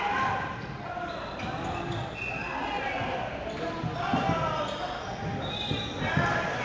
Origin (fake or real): real